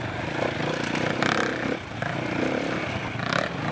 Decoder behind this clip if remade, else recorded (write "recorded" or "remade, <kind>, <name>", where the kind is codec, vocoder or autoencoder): recorded